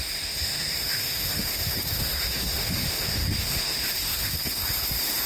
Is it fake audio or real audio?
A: fake